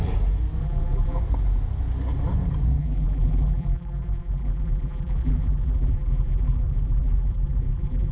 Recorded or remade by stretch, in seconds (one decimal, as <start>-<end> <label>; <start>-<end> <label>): 0.0-0.6 recorded; 0.6-1.2 remade; 1.2-2.8 recorded; 2.8-8.1 remade